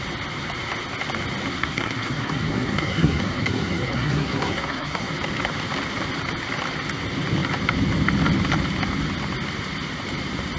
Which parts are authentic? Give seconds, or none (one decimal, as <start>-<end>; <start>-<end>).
0.0-1.5; 5.1-10.6